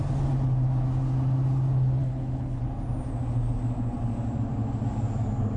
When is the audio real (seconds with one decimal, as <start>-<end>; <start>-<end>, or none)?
0.0-2.0; 2.6-5.6